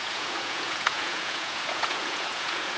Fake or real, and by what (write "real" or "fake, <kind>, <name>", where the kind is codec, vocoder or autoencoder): fake, vocoder, Vocos